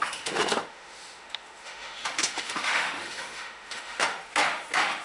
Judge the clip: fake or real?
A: fake